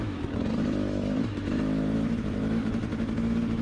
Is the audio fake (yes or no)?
yes